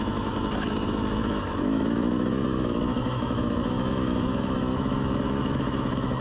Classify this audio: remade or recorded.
remade